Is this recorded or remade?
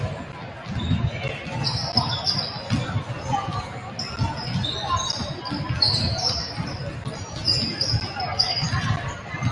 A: recorded